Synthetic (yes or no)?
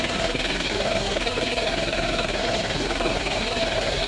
yes